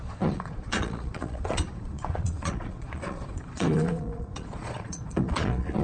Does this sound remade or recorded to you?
remade